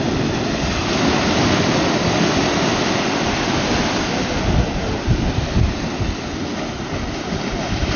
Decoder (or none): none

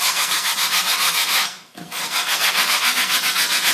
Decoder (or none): codec, SNAC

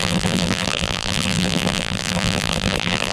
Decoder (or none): vocoder, BigVGAN v2